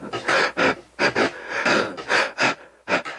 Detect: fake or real real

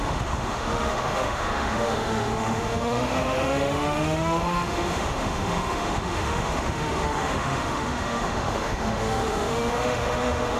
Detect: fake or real fake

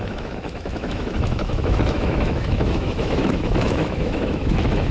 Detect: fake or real fake